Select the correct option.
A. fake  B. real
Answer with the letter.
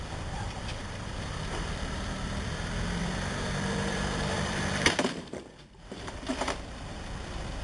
A